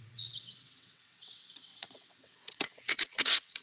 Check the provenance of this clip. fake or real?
fake